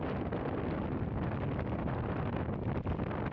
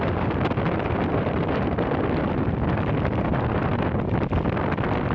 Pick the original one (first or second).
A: first